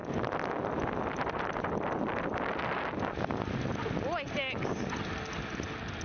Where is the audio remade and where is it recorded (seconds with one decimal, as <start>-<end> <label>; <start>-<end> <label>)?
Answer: 0.0-6.0 recorded